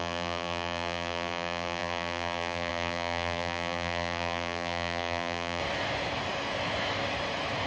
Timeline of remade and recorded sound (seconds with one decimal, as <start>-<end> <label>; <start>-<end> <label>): 0.0-5.6 remade; 5.6-7.7 recorded